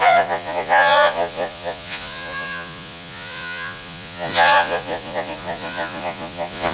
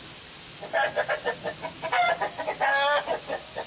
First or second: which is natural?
second